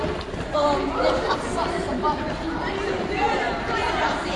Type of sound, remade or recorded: recorded